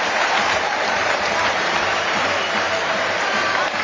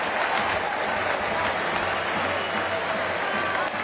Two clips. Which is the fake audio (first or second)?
first